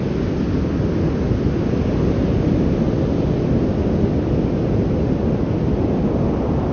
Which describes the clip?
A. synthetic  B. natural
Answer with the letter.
B